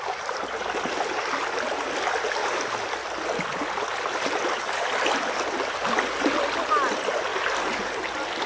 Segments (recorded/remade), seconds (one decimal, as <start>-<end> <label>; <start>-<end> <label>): 0.0-7.3 recorded; 7.3-8.0 remade; 8.0-8.5 recorded